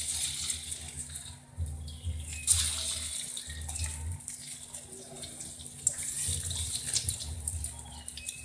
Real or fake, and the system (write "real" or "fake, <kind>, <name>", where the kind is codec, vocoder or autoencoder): real